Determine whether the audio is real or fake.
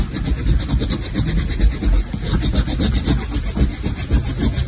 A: real